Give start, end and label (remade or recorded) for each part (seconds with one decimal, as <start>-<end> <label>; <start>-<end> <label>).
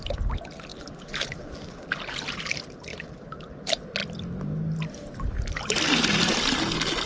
0.0-7.1 recorded